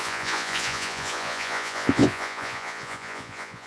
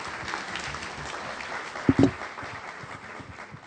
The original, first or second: second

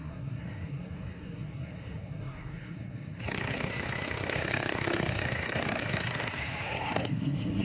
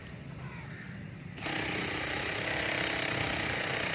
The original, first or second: second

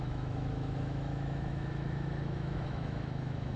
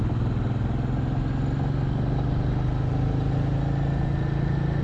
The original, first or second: second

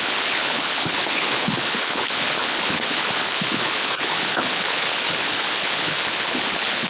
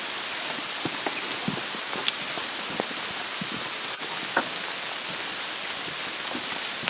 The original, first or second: second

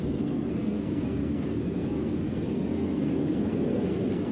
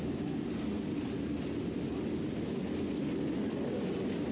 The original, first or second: second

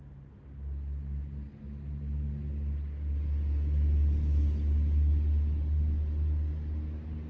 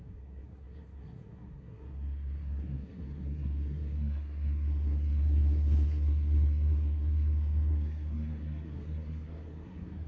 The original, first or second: first